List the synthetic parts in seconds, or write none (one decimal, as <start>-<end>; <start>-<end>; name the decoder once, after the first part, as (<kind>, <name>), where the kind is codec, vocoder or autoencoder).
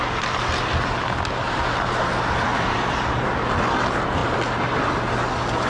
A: none